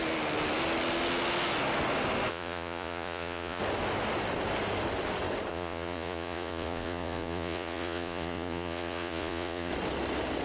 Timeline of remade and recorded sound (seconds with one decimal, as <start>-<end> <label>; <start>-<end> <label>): 0.0-2.3 recorded; 2.3-3.6 remade; 3.6-5.5 recorded; 5.5-9.7 remade; 9.7-10.4 recorded